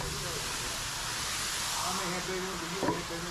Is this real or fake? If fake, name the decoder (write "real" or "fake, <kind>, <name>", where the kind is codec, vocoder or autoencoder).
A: real